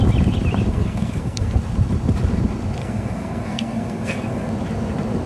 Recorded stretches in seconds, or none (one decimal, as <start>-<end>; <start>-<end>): 0.0-0.7; 1.6-2.8; 4.5-5.3